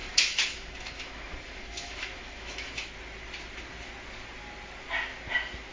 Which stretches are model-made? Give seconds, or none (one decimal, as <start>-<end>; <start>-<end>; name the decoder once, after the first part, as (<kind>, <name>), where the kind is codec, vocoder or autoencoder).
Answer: 0.0-2.9 (autoencoder, DAC-VAE)